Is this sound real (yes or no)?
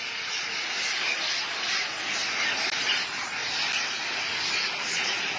yes